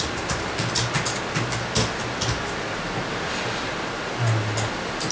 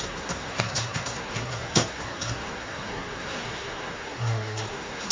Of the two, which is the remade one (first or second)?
second